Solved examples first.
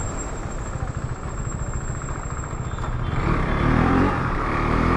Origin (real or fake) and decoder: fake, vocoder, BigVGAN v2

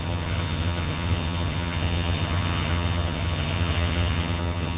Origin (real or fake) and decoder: fake, vocoder, HiFi-GAN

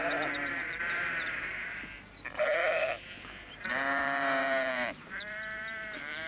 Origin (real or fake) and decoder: fake, vocoder, BigVGAN v2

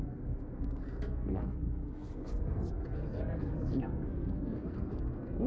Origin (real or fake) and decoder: fake, codec, SNAC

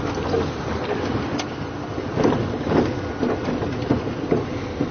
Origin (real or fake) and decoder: real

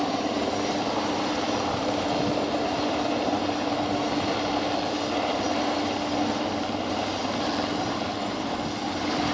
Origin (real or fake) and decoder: real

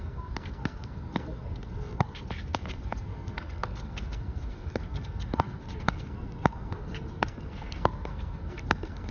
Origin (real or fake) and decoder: fake, codec, SNAC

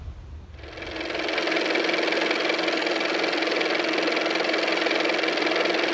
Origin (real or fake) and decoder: real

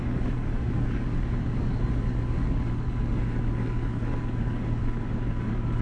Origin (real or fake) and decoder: fake, codec, DAC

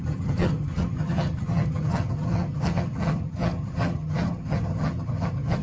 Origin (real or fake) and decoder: fake, vocoder, HiFi-GAN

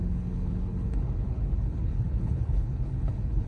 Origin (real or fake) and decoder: fake, codec, HILCodec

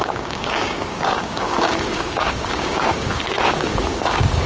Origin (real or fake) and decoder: fake, codec, DAC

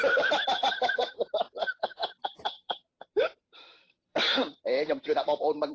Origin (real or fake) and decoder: fake, vocoder, BigVGAN v2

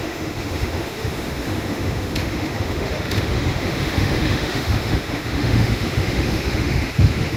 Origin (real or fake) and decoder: fake, autoencoder, DAC-VAE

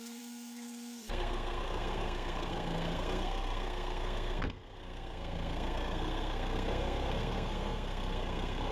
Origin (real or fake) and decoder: fake, codec, SNAC